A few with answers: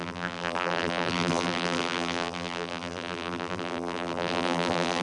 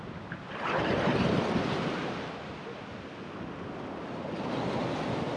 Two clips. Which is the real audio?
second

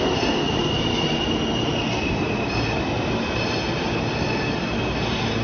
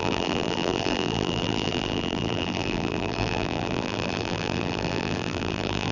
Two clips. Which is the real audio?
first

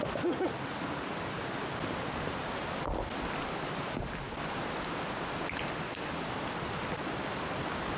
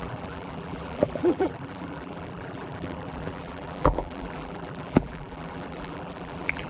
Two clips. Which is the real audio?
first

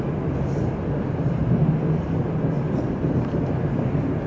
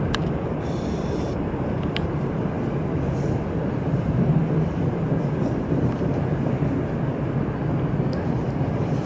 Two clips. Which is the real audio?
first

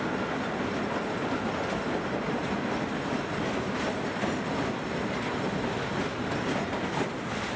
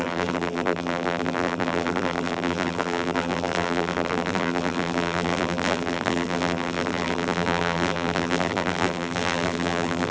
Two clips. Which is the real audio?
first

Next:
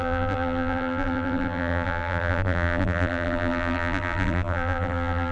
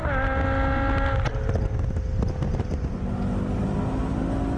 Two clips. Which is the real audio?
second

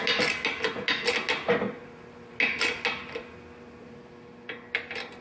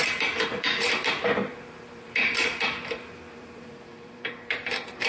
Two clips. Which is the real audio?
first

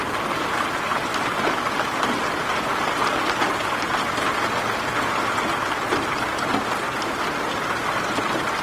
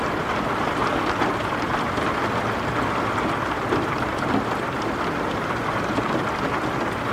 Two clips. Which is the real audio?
first